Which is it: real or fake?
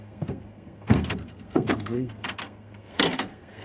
fake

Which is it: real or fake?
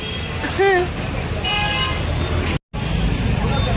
real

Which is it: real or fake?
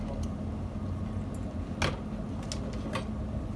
real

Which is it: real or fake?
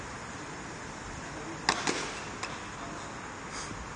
real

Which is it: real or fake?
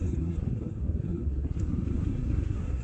fake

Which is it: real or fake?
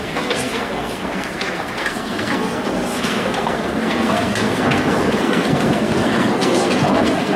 fake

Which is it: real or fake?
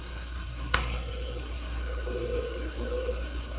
fake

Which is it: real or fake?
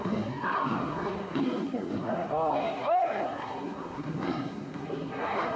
fake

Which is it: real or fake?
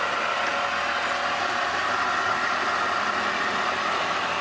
real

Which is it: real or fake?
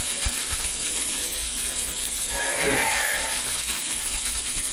fake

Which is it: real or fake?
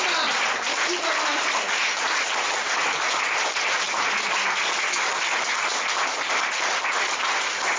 real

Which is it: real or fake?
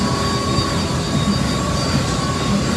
real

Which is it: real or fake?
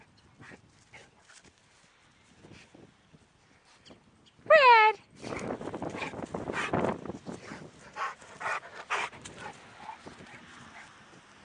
real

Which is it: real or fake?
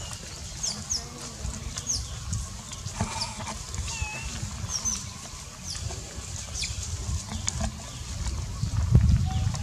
real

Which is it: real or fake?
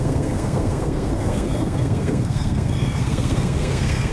fake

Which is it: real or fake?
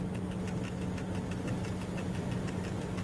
real